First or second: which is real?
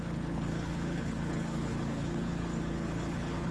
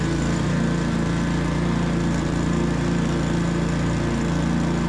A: second